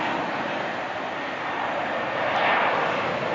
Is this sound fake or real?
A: real